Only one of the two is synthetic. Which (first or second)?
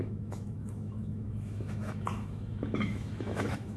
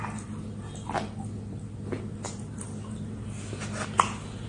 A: first